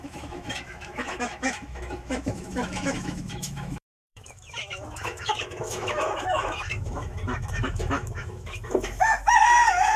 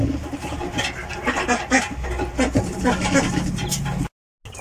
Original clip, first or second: second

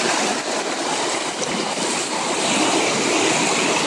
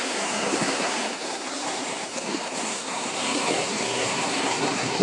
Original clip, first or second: first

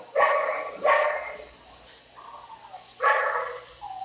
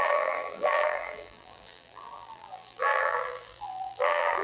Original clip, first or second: first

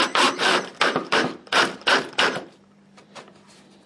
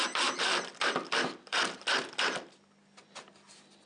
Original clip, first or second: second